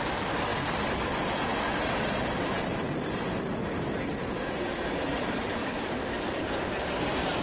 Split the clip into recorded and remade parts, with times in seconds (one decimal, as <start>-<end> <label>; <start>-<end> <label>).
0.0-0.5 remade; 0.5-4.7 recorded; 4.7-7.4 remade